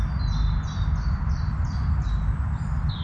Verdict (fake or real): real